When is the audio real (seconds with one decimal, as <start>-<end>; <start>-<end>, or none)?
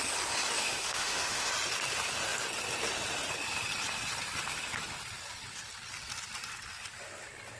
0.0-0.6; 1.5-7.6